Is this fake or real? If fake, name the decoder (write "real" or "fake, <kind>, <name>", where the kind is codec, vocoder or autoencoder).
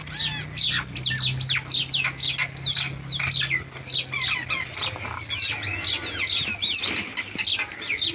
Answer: real